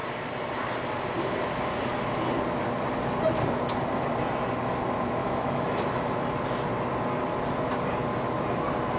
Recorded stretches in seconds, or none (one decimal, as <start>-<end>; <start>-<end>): 0.0-5.2; 6.1-9.0